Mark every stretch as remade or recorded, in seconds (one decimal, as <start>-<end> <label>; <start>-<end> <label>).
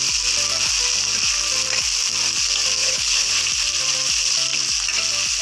0.0-2.8 recorded; 2.8-3.4 remade; 3.4-5.4 recorded